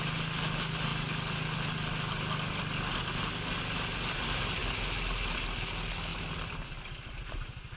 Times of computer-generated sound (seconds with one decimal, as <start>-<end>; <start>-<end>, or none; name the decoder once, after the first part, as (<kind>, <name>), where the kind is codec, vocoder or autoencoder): none